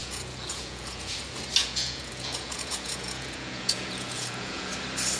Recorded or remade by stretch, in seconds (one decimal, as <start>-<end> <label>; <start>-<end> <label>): 0.0-1.2 remade; 1.2-1.6 recorded; 1.6-4.7 remade; 4.7-5.2 recorded